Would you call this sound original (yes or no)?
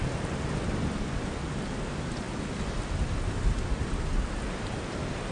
yes